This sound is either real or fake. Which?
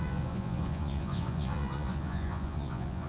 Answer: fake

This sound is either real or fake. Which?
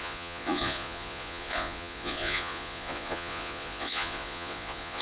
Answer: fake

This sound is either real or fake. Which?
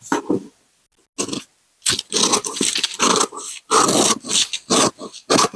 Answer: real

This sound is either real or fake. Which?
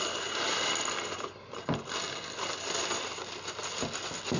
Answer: real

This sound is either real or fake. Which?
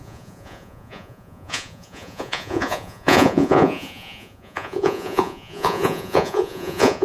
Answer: fake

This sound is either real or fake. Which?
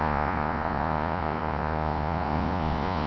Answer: fake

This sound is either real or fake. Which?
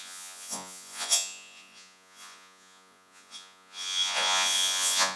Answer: fake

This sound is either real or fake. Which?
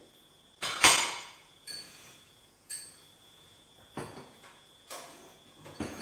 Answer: fake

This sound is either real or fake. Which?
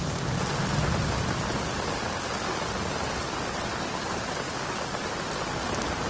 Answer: real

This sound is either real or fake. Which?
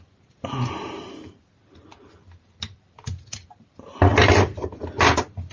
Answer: real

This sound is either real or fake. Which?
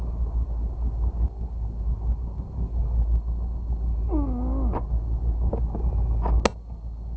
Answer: real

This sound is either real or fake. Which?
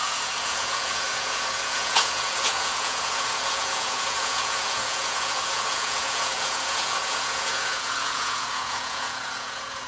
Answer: fake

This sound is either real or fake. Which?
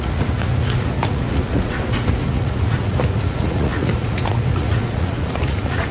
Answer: fake